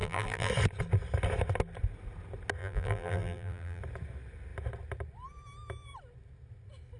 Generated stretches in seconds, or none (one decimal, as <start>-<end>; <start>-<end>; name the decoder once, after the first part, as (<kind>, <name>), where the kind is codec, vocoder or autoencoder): 0.0-0.5 (vocoder, BigVGAN v2); 2.6-3.8